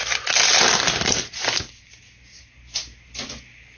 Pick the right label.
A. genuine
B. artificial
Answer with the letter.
A